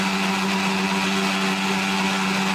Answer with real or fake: real